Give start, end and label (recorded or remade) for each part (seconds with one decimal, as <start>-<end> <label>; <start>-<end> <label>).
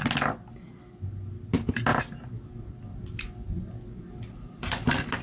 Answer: 0.0-5.2 recorded